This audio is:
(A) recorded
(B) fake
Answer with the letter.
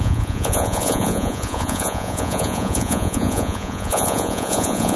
B